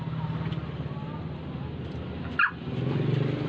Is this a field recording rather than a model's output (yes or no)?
yes